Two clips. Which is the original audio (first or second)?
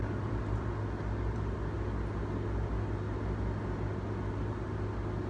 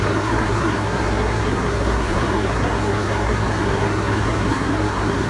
first